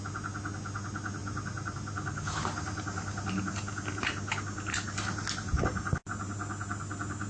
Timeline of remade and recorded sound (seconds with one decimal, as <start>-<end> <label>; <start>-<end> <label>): 0.0-7.3 recorded